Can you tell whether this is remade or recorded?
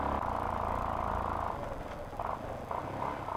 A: recorded